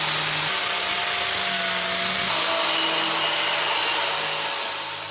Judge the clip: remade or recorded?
recorded